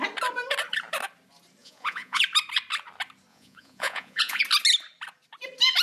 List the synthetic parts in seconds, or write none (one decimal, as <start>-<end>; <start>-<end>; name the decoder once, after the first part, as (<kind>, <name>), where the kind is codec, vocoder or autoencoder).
1.6-2.2 (vocoder, Vocos); 3.3-4.4